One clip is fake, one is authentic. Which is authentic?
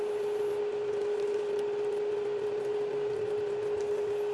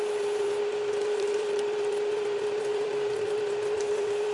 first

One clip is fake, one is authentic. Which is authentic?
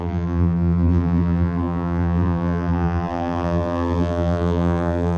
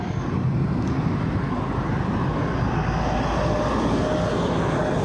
second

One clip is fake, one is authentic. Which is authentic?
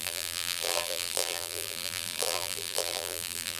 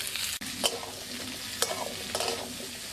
second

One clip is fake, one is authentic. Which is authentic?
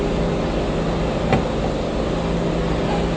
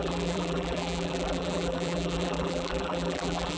first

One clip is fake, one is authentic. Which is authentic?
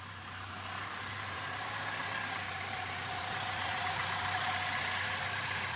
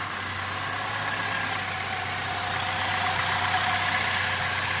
second